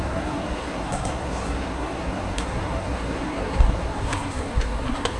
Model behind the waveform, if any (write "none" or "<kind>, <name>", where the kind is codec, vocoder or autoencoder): codec, SNAC